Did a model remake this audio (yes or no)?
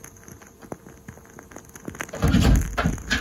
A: no